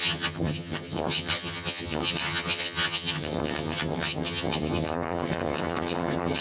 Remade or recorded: remade